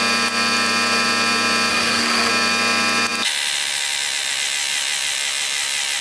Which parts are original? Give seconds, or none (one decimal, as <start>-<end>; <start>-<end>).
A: 0.0-1.7; 2.3-6.0